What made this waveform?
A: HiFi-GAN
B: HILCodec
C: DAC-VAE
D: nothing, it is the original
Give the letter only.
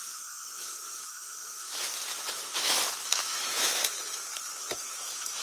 C